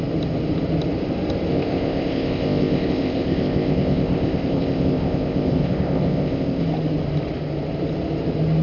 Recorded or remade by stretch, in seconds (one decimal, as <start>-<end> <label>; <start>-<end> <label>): 0.0-1.5 recorded; 1.5-6.6 remade; 6.6-8.6 recorded